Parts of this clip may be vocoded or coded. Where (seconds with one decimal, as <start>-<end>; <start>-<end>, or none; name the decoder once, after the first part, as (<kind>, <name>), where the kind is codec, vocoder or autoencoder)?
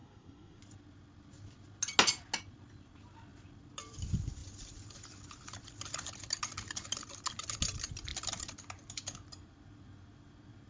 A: 0.0-0.6 (codec, SNAC)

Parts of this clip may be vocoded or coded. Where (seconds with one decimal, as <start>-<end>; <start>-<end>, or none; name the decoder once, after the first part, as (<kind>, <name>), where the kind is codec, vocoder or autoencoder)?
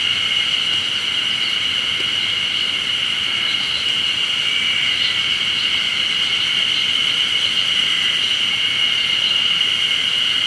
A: none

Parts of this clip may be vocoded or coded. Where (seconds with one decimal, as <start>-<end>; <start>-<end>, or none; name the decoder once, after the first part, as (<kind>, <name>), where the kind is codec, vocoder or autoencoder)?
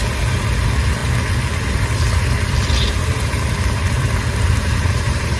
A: 4.6-5.4 (vocoder, BigVGAN v2)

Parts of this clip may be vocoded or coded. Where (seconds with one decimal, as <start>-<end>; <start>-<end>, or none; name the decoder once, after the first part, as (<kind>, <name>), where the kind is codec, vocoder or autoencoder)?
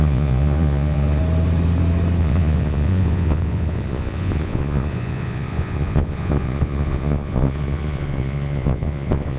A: 0.0-1.2 (vocoder, Vocos); 2.2-9.4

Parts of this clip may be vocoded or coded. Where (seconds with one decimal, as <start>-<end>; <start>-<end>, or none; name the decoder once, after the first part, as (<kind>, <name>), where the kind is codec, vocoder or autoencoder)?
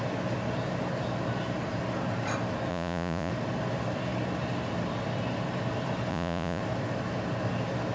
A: 2.7-3.3 (vocoder, Vocos); 6.1-6.6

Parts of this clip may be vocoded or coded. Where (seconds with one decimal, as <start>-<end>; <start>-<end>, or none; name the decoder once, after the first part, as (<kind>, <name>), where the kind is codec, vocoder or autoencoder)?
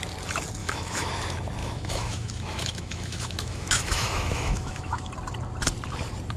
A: 0.6-1.1 (autoencoder, DAC-VAE); 1.6-5.1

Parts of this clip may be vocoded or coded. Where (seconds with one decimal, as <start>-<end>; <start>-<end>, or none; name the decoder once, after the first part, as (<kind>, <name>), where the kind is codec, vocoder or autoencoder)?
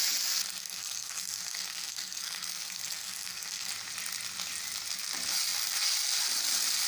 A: 0.6-3.7 (codec, SNAC)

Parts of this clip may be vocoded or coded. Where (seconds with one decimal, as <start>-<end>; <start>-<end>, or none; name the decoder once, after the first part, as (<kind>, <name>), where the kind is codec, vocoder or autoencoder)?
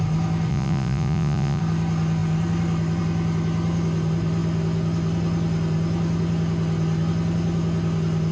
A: 0.5-1.6 (vocoder, Vocos)